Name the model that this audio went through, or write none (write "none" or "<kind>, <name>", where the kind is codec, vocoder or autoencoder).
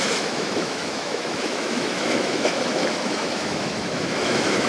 autoencoder, DAC-VAE